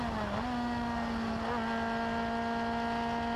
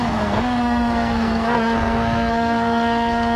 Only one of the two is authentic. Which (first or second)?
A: first